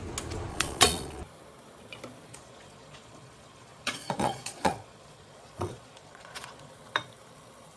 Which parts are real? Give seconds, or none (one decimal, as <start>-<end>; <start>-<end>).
0.0-0.5; 1.2-2.3; 6.7-7.8